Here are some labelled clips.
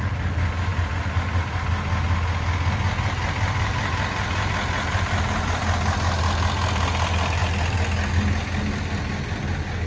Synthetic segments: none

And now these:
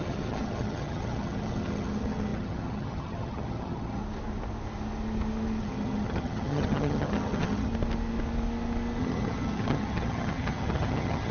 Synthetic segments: 0.0-4.0 (vocoder, HiFi-GAN); 5.6-7.7; 9.0-11.3

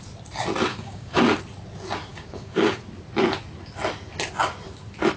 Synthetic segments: 0.7-1.2 (codec, DAC); 2.1-2.8

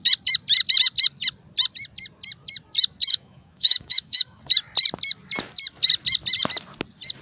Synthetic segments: 3.1-4.4 (autoencoder, DAC-VAE)

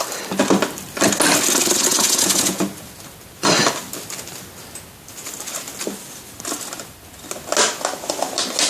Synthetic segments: 1.9-2.6 (vocoder, Vocos)

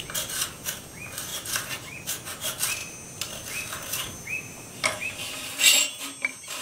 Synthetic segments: 1.3-2.0 (vocoder, BigVGAN v2)